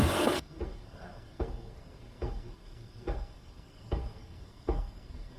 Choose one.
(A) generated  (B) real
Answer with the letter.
A